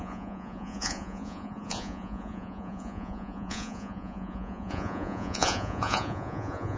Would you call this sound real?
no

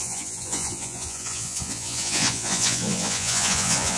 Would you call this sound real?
no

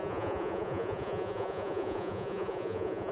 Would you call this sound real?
no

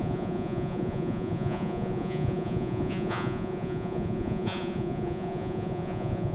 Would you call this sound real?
no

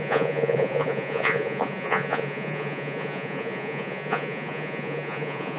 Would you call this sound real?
no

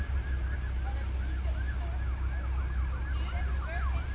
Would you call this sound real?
yes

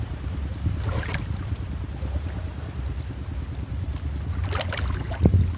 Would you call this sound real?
yes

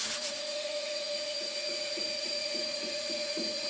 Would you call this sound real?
no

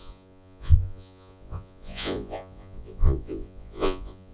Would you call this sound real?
no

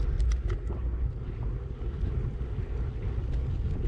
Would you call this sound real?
yes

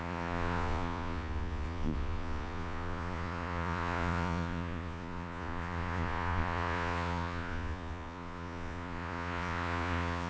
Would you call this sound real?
no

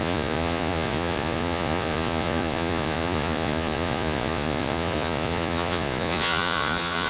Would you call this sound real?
no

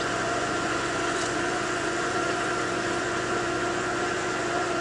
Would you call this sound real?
no